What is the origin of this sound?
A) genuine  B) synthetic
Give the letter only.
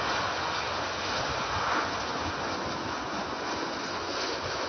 B